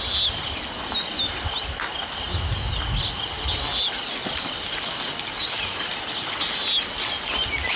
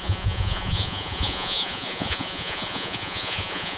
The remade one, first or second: second